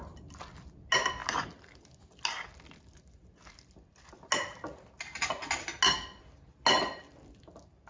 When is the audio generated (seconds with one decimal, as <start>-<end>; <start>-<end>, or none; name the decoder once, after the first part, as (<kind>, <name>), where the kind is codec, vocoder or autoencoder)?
none